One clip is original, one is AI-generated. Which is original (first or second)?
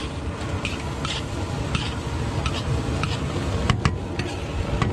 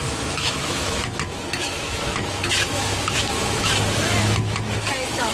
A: first